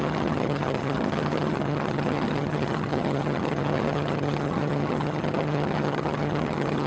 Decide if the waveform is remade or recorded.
remade